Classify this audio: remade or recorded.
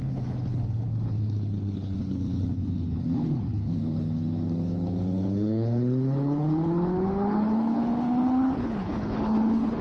remade